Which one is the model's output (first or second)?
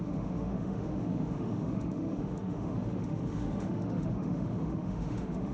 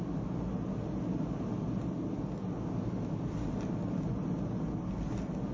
first